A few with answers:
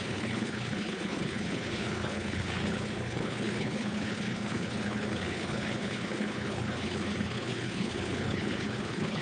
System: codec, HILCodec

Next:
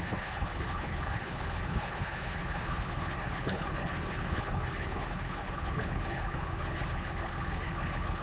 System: codec, HILCodec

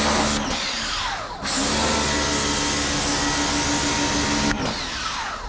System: none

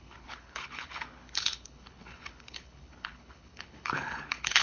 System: codec, HILCodec